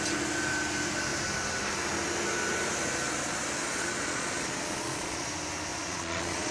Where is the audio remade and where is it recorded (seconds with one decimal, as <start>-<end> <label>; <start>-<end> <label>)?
0.0-3.6 recorded; 3.6-5.3 remade; 5.3-5.7 recorded; 5.7-6.5 remade